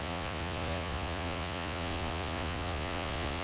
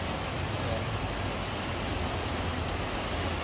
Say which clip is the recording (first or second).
second